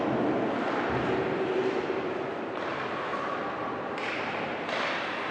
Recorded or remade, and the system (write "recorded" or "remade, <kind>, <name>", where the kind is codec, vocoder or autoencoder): recorded